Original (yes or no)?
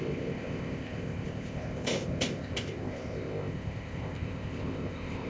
no